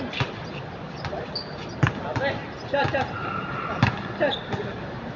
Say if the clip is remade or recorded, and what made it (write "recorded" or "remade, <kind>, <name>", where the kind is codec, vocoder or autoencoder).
recorded